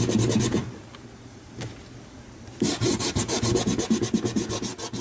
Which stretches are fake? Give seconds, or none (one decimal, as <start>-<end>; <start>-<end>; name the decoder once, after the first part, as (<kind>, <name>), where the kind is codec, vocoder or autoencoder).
0.6-3.6 (vocoder, BigVGAN v2)